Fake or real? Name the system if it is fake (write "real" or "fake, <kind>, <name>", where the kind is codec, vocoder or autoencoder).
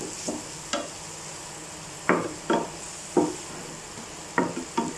real